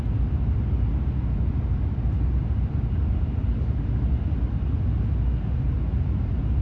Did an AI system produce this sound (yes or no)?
no